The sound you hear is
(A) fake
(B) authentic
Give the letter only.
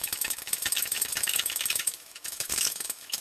A